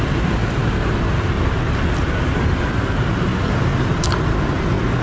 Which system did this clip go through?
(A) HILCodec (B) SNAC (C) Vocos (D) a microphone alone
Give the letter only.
D